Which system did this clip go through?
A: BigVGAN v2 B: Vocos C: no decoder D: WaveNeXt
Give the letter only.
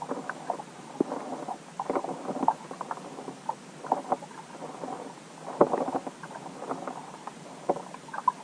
C